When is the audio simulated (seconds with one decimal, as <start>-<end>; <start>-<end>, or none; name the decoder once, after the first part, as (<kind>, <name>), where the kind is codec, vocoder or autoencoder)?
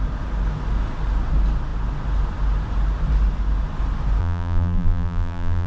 4.2-5.7 (vocoder, BigVGAN v2)